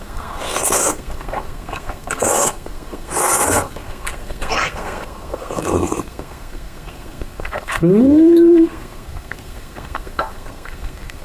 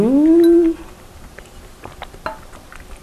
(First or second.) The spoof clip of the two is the first